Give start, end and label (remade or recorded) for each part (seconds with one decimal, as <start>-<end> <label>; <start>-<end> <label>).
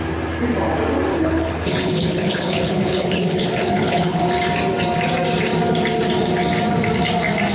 0.0-1.1 recorded; 1.1-4.3 remade; 4.3-7.5 recorded